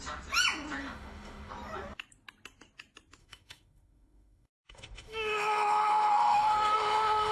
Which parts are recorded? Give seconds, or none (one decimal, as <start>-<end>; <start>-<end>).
0.0-0.8; 1.5-3.2